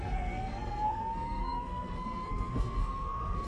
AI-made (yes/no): yes